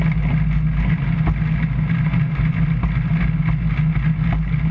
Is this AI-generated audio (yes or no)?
no